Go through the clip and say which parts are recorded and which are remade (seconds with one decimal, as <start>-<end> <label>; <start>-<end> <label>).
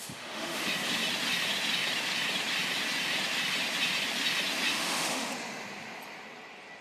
0.0-0.6 remade; 0.6-4.7 recorded; 4.7-5.3 remade; 5.3-6.8 recorded